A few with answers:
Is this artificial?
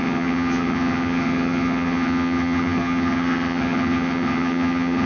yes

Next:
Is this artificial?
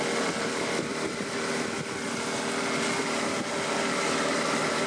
no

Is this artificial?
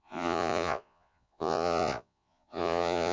yes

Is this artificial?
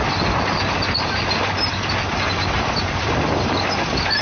no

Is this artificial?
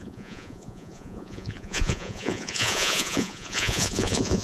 yes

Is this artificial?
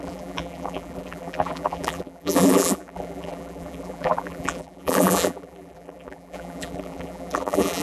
yes